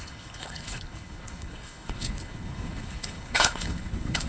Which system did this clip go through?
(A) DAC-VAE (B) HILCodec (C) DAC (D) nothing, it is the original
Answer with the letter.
B